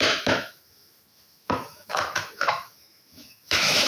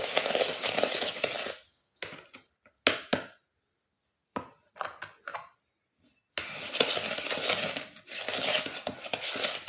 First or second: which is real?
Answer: second